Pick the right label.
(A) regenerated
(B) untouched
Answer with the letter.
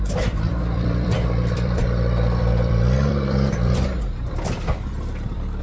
A